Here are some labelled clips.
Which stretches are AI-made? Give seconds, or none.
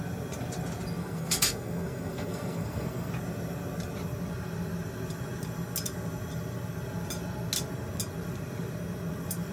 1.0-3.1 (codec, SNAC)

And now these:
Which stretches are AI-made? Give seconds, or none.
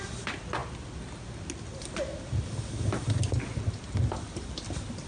none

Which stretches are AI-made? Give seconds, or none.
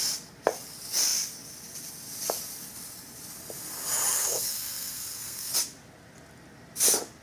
4.1-5.5 (codec, SNAC)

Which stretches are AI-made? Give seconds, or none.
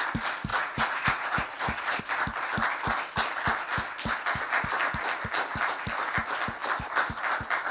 0.5-2.0 (vocoder, Vocos)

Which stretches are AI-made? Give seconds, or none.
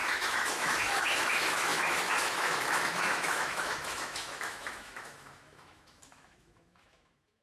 0.0-7.4 (autoencoder, DAC-VAE)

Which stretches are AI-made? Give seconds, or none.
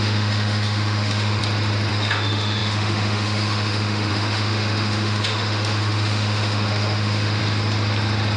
0.0-1.4 (autoencoder, DAC-VAE); 1.9-7.4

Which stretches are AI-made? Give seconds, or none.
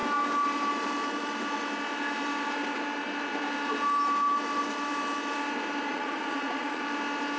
5.9-6.8 (vocoder, Vocos)